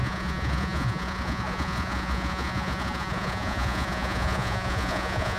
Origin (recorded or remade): remade